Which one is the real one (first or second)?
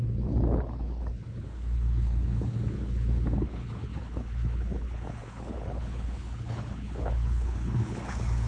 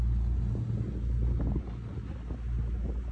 second